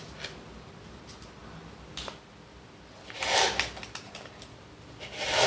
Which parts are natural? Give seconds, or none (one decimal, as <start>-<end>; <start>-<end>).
0.0-5.5